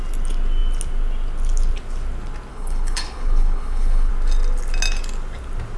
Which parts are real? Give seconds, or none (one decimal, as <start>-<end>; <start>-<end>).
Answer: 0.0-2.5; 4.1-5.8